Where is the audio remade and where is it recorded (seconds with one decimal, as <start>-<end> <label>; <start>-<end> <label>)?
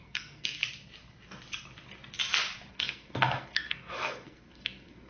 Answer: 0.0-0.6 remade; 0.6-2.7 recorded; 2.7-5.1 remade